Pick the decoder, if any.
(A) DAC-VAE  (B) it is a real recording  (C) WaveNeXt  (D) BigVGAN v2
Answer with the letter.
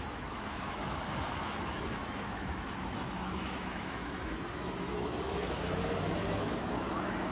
A